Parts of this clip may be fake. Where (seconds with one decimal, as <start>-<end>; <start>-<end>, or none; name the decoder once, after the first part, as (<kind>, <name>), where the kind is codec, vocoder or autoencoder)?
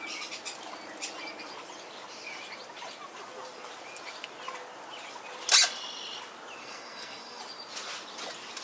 6.6-7.4 (codec, SNAC)